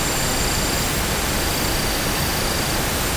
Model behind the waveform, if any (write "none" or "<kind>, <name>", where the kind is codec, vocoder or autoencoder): none